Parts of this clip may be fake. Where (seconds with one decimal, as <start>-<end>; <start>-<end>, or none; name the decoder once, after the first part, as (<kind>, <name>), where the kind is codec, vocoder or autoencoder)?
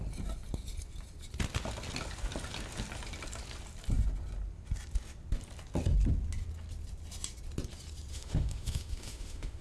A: 8.1-9.6 (autoencoder, DAC-VAE)